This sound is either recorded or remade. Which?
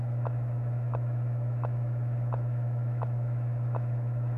remade